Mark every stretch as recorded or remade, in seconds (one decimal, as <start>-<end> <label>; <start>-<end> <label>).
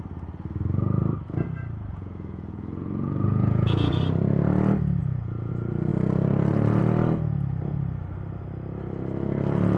0.0-1.9 recorded; 1.9-4.0 remade; 4.0-5.0 recorded; 5.0-5.5 remade; 5.5-9.8 recorded